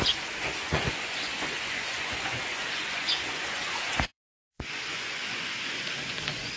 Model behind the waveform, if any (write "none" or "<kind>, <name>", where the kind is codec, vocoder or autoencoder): vocoder, Vocos